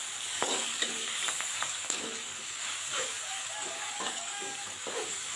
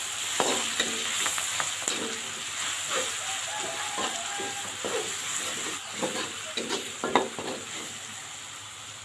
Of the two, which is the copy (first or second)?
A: first